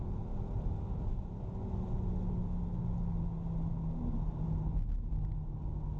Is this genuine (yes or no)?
yes